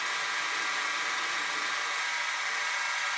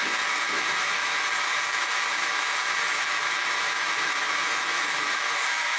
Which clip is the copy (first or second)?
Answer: second